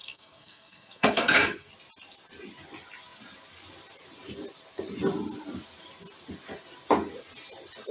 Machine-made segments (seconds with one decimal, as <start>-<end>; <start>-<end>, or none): 0.0-1.7